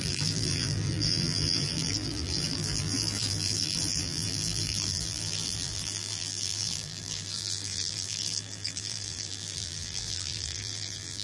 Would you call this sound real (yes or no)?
no